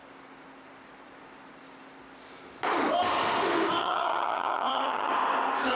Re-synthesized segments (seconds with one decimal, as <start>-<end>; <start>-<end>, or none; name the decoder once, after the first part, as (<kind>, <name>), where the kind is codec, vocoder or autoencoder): 3.8-5.1 (vocoder, HiFi-GAN)